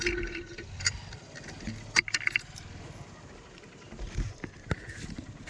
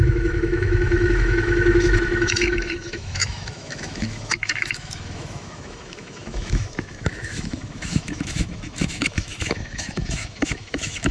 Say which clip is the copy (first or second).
second